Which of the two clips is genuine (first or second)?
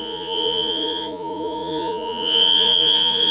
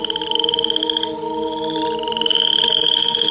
second